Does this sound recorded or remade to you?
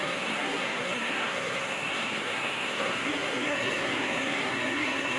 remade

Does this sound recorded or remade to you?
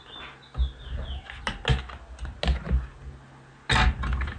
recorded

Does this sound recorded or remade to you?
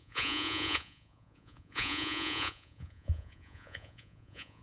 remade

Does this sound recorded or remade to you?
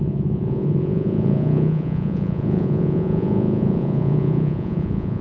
remade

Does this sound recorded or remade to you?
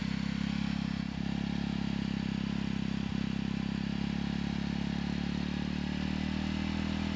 recorded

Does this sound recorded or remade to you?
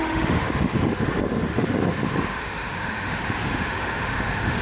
remade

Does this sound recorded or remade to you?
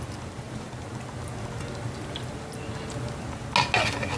recorded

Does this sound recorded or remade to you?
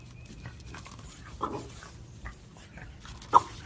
recorded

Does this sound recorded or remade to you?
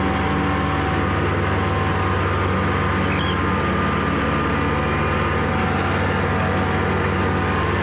recorded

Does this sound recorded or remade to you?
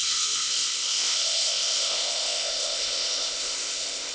remade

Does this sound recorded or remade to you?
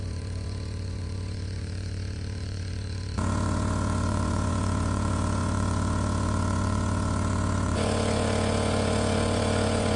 remade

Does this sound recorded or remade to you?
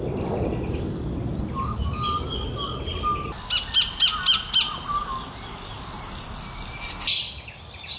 recorded